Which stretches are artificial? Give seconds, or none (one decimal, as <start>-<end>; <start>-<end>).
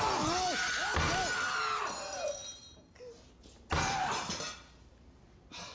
none